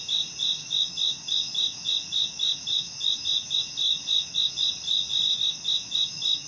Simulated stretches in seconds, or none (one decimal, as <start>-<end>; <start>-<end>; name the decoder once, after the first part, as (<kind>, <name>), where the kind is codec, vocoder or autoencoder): 0.6-4.5 (autoencoder, DAC-VAE); 5.3-6.5